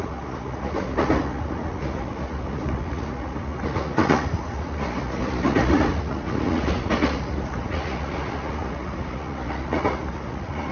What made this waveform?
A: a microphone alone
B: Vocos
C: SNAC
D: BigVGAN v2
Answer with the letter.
B